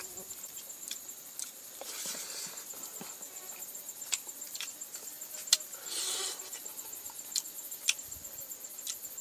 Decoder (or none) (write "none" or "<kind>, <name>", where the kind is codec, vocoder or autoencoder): vocoder, BigVGAN v2